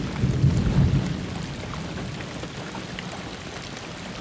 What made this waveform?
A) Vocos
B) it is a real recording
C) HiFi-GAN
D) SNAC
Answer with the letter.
B